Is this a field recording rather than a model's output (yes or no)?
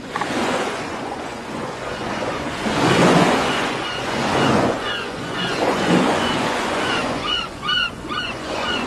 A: no